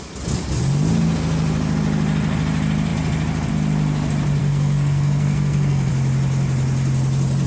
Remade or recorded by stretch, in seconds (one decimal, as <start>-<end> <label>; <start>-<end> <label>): 0.0-4.4 recorded; 4.4-5.9 remade; 5.9-7.5 recorded